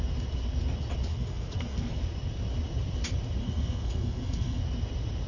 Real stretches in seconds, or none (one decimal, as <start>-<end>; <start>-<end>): 0.0-1.1; 2.0-3.4; 4.6-5.3